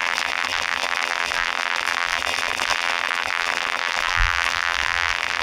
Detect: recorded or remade remade